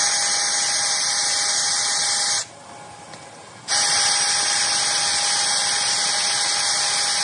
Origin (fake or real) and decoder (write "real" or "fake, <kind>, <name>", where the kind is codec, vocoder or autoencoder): real